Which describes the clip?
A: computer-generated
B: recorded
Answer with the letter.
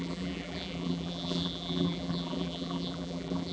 A